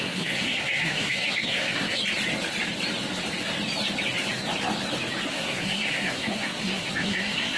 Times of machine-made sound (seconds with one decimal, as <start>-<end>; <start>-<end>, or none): 0.0-2.0; 5.3-7.6